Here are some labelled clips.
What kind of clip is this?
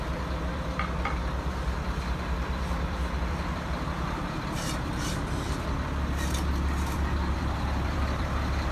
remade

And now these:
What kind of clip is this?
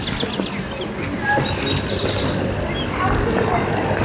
recorded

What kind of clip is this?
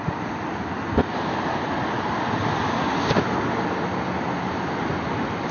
recorded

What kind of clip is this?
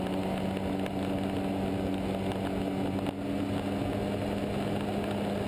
recorded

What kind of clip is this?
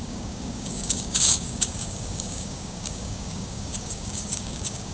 remade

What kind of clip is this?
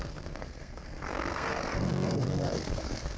remade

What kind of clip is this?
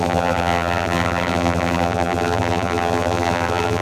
remade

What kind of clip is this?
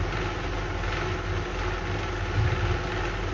recorded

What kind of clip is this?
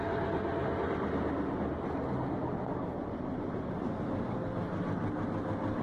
recorded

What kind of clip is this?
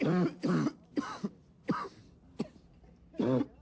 recorded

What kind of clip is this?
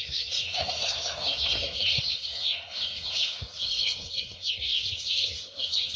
remade